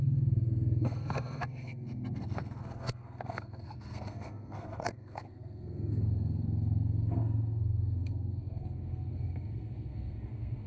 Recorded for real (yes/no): no